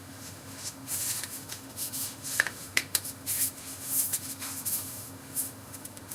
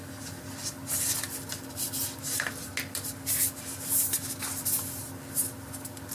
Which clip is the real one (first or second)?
second